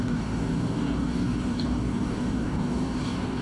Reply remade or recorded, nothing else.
remade